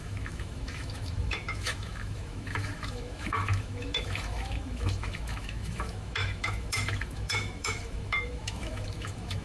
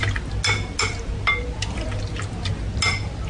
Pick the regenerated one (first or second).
first